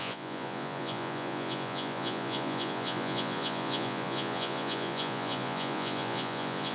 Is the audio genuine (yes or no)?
no